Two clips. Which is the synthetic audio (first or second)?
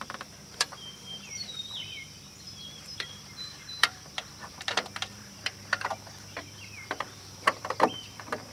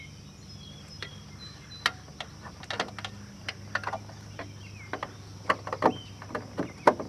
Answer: first